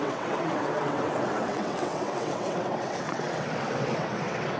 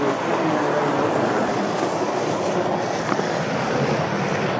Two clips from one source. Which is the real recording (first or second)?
second